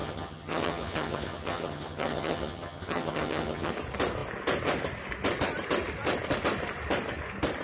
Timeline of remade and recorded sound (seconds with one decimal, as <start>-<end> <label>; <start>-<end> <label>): 0.0-3.7 remade; 3.7-7.6 recorded